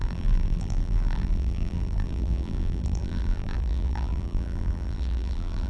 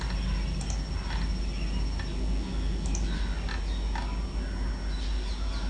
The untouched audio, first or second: second